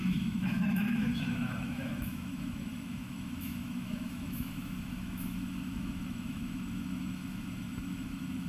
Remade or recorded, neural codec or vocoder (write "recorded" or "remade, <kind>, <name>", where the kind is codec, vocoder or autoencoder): remade, autoencoder, DAC-VAE